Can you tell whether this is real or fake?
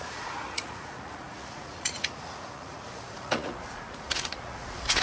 fake